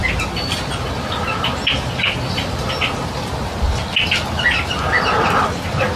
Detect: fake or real real